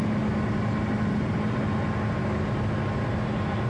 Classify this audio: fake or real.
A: real